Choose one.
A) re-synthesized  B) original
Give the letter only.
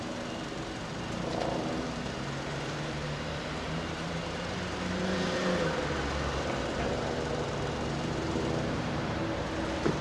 A